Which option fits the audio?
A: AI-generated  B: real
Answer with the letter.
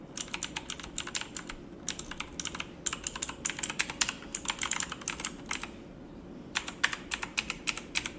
B